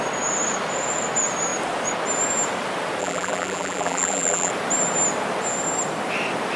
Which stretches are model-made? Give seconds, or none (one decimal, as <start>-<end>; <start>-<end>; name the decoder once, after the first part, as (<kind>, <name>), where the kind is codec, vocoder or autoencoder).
3.0-4.5 (vocoder, BigVGAN v2)